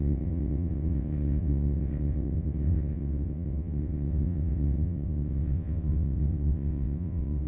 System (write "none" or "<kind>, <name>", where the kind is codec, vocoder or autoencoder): vocoder, WaveNeXt